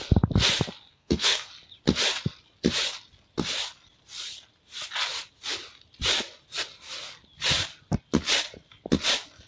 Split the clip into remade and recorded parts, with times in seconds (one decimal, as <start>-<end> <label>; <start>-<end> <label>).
0.0-0.9 recorded; 0.9-1.5 remade; 1.5-9.5 recorded